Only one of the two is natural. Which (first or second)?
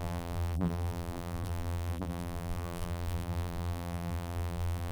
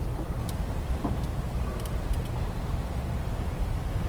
second